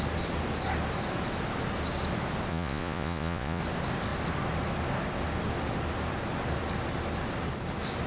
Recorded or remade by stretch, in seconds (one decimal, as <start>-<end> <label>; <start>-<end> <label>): 0.0-2.5 recorded; 2.5-3.6 remade; 3.6-8.1 recorded